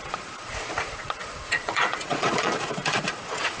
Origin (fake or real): fake